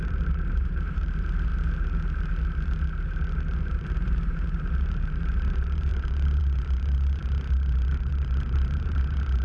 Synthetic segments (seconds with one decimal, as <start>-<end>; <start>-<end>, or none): 0.0-1.5; 3.6-9.4